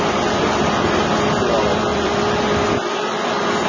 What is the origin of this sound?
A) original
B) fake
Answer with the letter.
A